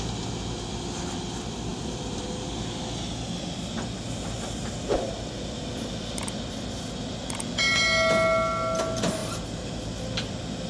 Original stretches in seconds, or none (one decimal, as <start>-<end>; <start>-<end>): 0.0-1.7; 2.2-9.2; 10.0-10.7